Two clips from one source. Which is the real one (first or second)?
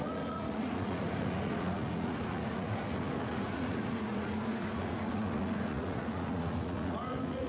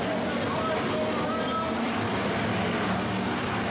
second